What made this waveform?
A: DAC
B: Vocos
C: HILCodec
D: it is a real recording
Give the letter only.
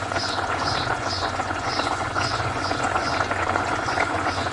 B